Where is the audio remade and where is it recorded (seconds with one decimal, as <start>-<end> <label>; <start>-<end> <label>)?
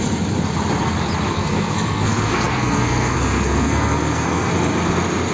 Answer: 0.0-1.3 recorded; 1.3-4.5 remade; 4.5-5.3 recorded